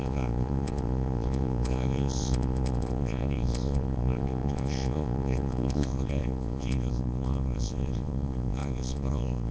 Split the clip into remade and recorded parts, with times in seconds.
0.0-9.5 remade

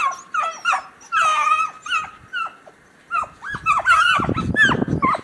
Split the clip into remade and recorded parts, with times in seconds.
0.0-1.3 recorded; 1.3-1.8 remade; 1.8-5.2 recorded

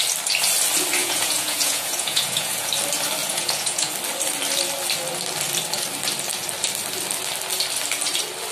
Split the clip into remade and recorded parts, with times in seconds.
0.0-1.0 recorded; 1.0-2.7 remade; 2.7-3.2 recorded; 3.2-3.9 remade; 3.9-8.5 recorded

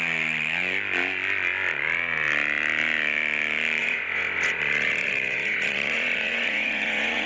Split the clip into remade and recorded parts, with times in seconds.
0.0-3.8 recorded; 3.8-7.3 remade

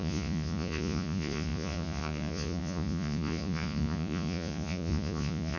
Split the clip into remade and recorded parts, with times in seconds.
0.0-5.6 remade